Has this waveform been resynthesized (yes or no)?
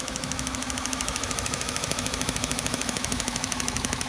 yes